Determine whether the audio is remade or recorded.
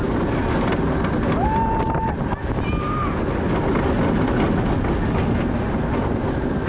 recorded